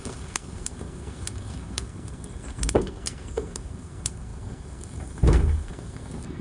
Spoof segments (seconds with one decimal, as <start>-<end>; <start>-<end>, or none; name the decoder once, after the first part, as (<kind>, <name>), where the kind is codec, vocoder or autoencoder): 0.0-6.4 (codec, SNAC)